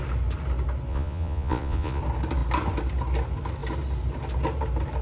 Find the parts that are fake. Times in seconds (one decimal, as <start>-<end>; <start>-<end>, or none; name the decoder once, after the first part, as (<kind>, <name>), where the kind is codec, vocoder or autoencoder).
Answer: 0.9-2.0 (vocoder, Vocos)